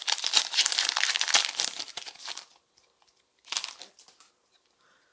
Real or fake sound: real